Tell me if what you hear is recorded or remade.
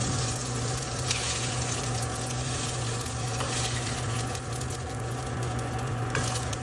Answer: remade